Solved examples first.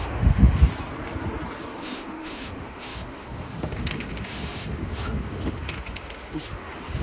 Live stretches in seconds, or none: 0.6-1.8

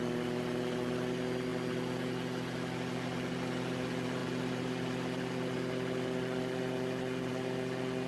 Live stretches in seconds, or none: 0.0-8.1